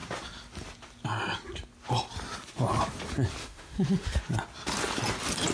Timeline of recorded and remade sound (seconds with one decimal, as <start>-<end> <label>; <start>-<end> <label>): 0.0-3.4 recorded; 3.4-4.2 remade; 4.2-5.5 recorded